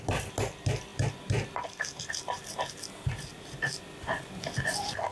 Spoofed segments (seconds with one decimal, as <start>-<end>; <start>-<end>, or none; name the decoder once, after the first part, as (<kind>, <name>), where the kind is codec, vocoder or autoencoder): none